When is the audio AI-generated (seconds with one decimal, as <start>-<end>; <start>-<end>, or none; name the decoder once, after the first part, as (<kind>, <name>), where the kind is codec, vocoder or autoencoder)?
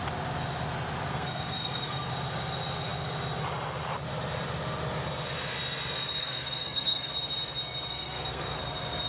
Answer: 1.1-2.1 (codec, SNAC); 6.2-7.1; 7.9-8.6